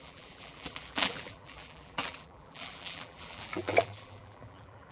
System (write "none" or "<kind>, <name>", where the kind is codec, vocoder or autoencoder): vocoder, BigVGAN v2